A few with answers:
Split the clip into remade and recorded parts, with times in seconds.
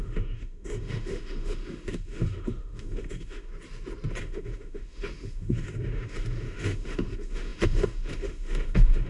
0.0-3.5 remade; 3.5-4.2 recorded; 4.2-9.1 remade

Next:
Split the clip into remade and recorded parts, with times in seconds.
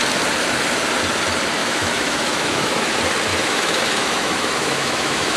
0.0-1.6 recorded; 1.6-2.9 remade; 2.9-3.3 recorded; 3.3-5.4 remade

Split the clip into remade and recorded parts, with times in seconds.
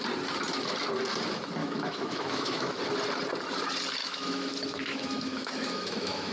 0.0-1.6 recorded; 1.6-2.8 remade; 2.8-4.0 recorded; 4.0-6.3 remade